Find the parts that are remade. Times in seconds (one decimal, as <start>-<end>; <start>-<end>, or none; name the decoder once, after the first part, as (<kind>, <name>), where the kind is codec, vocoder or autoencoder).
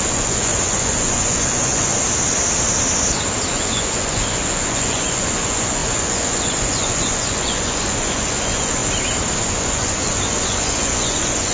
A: 0.0-1.9 (vocoder, Vocos); 3.5-8.8; 9.4-11.5